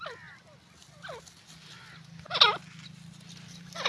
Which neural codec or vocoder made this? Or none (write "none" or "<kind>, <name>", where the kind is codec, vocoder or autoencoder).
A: none